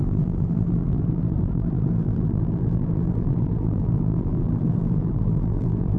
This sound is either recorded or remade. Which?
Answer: remade